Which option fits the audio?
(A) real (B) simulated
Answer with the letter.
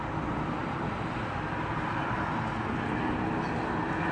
A